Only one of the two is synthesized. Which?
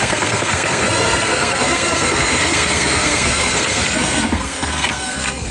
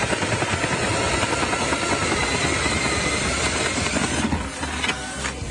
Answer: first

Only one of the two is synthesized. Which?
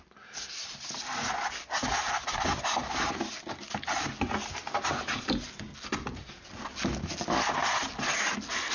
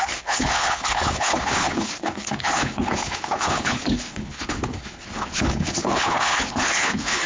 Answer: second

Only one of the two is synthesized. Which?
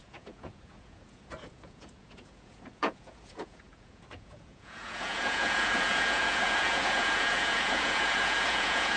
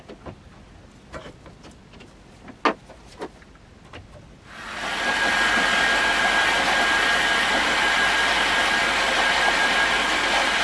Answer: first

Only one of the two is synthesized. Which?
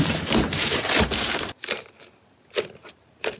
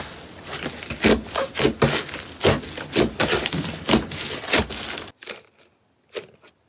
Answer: first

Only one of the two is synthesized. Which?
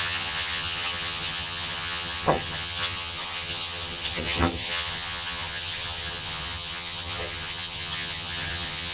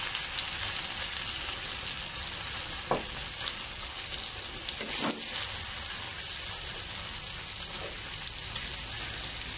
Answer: first